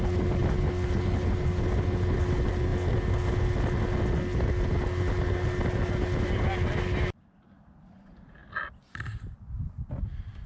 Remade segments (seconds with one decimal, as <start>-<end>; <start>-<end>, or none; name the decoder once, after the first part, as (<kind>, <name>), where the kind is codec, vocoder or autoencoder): none